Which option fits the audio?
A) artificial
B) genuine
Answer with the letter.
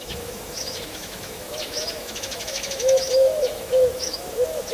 A